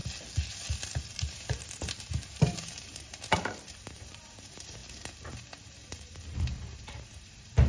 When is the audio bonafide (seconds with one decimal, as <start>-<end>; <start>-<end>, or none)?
0.0-1.1; 4.8-5.3